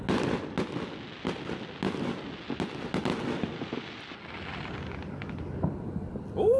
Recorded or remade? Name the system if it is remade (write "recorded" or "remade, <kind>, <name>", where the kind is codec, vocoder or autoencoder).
recorded